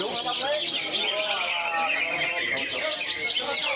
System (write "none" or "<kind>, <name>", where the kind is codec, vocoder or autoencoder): none